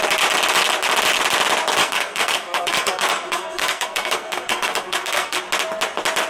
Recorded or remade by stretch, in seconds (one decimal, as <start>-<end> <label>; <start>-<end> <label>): 0.0-1.8 recorded; 1.8-5.4 remade; 5.4-6.3 recorded